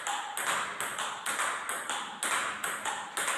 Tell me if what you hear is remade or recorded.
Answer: recorded